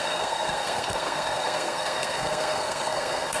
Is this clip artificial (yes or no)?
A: yes